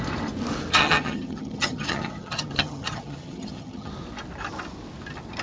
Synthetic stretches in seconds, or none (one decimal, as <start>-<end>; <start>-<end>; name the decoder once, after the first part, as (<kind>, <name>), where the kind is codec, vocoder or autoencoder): 0.8-3.9 (vocoder, HiFi-GAN)